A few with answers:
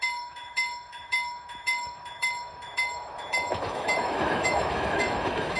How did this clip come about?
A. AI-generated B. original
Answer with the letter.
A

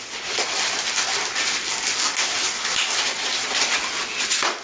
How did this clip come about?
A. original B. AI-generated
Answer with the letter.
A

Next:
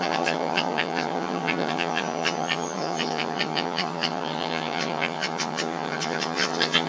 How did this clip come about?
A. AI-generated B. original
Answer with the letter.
A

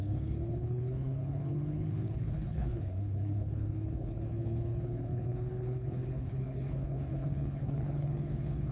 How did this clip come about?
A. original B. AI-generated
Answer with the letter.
B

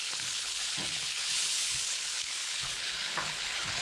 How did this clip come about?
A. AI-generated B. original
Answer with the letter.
A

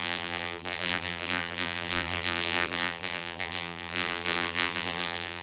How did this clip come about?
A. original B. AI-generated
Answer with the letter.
B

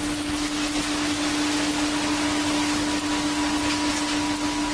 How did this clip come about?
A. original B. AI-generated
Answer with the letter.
A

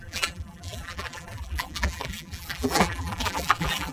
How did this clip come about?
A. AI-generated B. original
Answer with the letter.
A